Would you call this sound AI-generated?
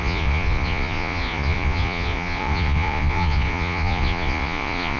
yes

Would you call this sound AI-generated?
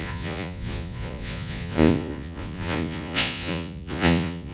yes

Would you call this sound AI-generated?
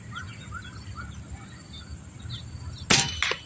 no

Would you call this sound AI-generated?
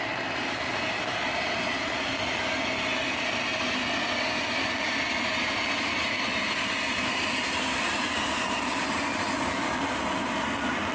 no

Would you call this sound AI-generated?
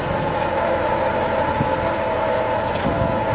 no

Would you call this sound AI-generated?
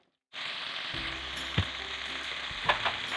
no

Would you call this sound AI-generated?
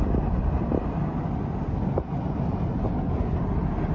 no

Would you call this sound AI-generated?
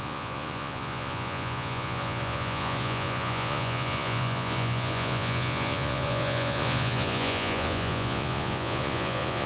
yes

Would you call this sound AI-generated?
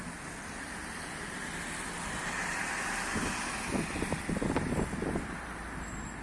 no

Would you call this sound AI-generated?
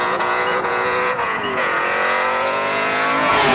yes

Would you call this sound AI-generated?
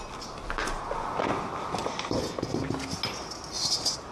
no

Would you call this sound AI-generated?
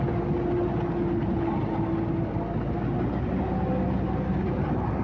no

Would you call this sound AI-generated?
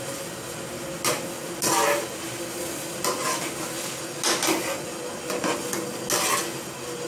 no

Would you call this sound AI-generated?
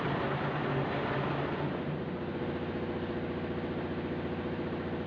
no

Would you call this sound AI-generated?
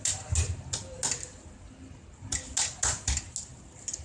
no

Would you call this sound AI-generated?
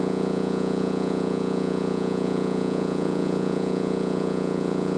yes